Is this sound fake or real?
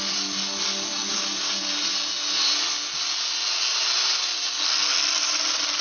real